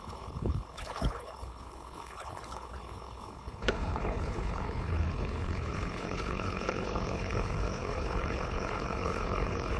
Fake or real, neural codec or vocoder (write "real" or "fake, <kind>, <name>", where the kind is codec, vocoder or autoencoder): fake, codec, HILCodec